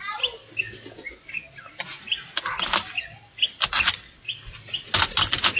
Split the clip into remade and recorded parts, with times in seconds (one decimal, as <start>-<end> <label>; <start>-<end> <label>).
0.0-5.6 recorded